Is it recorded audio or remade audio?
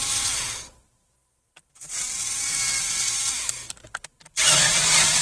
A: recorded